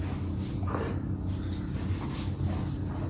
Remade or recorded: recorded